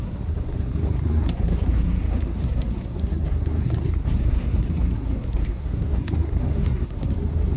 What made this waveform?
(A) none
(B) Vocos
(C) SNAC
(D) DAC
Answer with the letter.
C